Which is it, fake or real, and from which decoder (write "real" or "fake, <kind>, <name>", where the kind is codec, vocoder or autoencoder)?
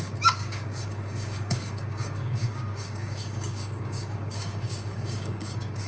fake, codec, DAC